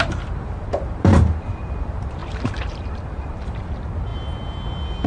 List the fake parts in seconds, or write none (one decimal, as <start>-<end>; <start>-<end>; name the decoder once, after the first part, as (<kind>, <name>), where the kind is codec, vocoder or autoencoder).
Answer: 0.0-4.1 (vocoder, BigVGAN v2)